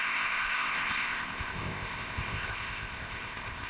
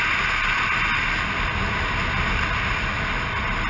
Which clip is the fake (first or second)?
first